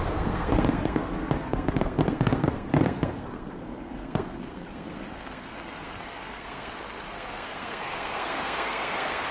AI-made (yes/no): yes